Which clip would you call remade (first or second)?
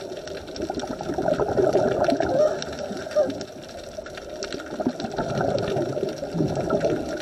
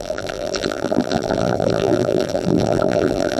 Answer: second